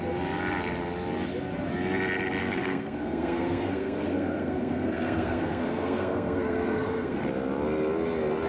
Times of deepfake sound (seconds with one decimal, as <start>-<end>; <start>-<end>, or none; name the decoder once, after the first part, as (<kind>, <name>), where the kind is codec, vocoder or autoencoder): 2.4-7.2 (codec, SNAC)